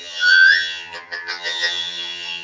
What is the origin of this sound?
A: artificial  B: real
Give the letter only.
A